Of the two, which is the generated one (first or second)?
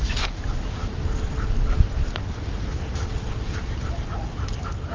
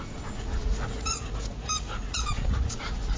second